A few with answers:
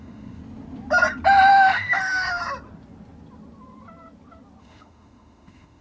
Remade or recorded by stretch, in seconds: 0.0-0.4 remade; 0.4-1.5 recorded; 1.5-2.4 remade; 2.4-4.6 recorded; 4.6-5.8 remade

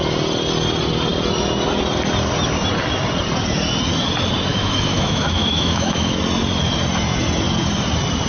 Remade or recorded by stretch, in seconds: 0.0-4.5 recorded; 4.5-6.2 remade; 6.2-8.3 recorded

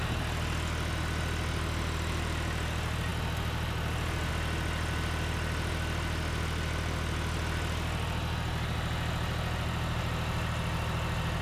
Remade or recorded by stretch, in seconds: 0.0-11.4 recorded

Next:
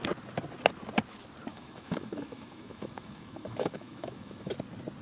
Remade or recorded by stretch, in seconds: 0.0-1.5 recorded; 1.5-4.5 remade; 4.5-5.0 recorded

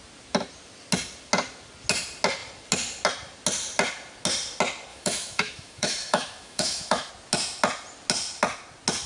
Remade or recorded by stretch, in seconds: 0.0-4.9 recorded; 4.9-7.1 remade; 7.1-9.1 recorded